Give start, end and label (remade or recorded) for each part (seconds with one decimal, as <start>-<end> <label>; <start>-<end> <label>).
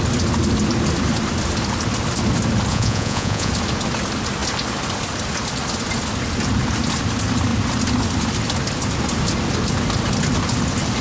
0.0-2.7 recorded; 2.7-3.5 remade; 3.5-11.0 recorded